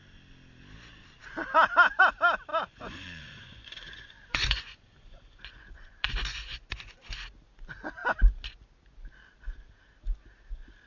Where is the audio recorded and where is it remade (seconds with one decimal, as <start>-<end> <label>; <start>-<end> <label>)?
0.0-2.5 recorded; 2.5-7.1 remade; 7.1-10.9 recorded

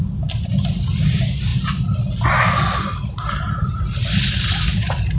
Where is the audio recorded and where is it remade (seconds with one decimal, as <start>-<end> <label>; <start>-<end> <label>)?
0.0-5.2 recorded

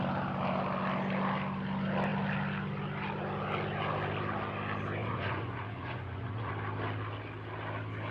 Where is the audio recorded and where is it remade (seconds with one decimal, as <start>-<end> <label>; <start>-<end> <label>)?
0.0-5.0 recorded; 5.0-6.5 remade; 6.5-8.1 recorded

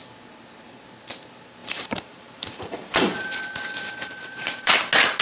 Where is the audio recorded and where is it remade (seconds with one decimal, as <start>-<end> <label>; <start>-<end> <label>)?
0.0-1.6 recorded; 1.6-4.7 remade; 4.7-5.2 recorded

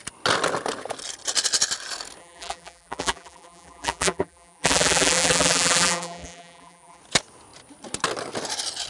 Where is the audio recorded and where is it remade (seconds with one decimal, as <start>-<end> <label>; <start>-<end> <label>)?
0.0-2.2 recorded; 2.2-7.0 remade; 7.0-8.9 recorded

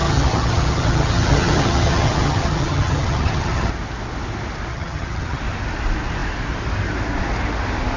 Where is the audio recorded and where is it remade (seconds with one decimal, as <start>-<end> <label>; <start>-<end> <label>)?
0.0-3.7 remade; 3.7-4.7 recorded; 4.7-5.4 remade; 5.4-8.0 recorded

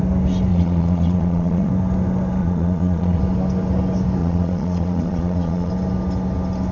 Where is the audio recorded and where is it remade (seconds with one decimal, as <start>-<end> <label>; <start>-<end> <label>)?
0.0-0.5 recorded; 0.5-1.7 remade; 1.7-2.4 recorded; 2.4-3.2 remade; 3.2-4.2 recorded; 4.2-5.7 remade; 5.7-6.7 recorded